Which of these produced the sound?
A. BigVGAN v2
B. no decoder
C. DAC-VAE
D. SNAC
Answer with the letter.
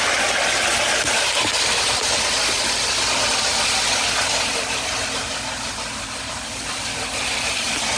B